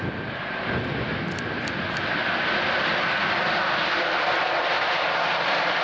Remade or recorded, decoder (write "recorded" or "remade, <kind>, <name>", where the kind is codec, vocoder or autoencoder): recorded